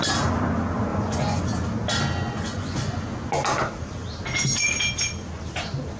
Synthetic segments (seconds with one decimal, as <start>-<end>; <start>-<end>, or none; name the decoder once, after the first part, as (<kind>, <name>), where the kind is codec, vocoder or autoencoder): 0.9-1.4 (vocoder, Vocos); 2.2-3.0